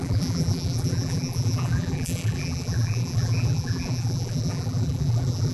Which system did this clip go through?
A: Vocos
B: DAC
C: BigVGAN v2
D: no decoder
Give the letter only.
C